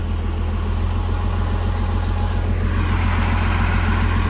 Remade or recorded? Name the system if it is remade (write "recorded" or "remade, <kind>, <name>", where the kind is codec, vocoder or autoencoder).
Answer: recorded